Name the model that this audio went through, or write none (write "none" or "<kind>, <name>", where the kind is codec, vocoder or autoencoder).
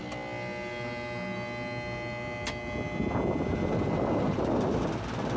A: none